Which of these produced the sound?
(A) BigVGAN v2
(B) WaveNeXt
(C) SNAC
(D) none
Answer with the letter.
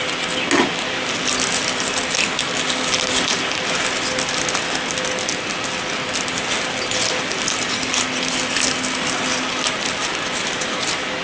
D